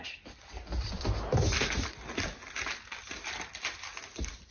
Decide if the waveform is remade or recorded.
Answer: recorded